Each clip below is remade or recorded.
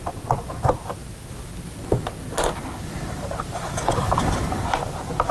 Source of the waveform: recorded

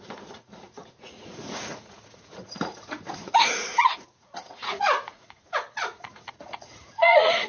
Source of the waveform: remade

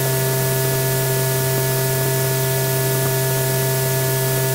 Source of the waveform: recorded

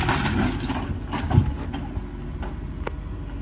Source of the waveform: recorded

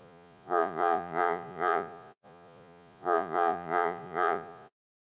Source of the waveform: remade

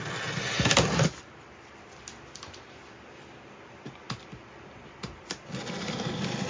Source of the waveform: recorded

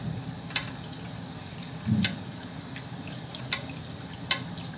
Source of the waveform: recorded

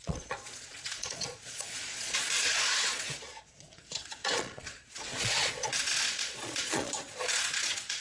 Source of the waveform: remade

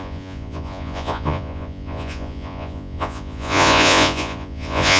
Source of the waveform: remade